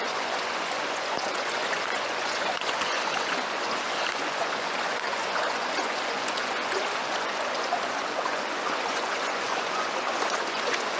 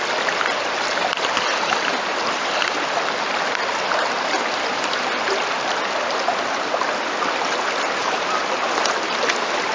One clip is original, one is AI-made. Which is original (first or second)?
second